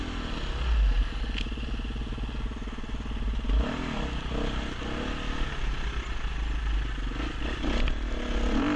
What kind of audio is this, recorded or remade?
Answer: recorded